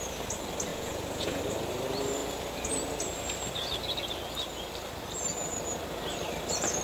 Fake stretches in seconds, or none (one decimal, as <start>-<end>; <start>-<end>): 0.7-1.4